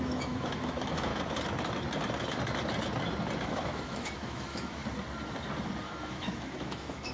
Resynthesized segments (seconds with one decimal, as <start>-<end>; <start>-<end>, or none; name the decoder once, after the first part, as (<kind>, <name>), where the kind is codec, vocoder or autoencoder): 0.0-1.1 (autoencoder, DAC-VAE); 3.4-4.8; 5.8-7.1